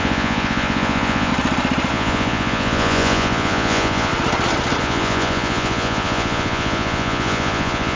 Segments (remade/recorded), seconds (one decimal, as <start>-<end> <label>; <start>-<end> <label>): 0.0-1.3 remade; 1.3-1.9 recorded; 1.9-4.1 remade; 4.1-4.8 recorded; 4.8-8.0 remade